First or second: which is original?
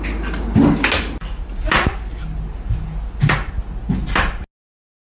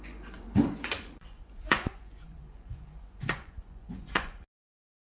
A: first